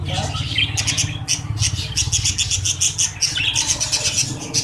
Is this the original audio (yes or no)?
yes